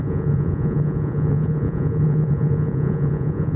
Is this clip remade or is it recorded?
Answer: remade